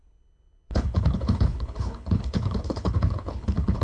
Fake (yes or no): yes